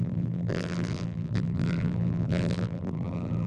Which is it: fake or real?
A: fake